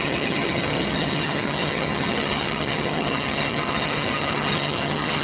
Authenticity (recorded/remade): remade